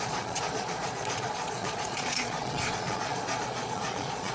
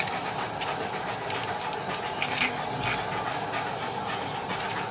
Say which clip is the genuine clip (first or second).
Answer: second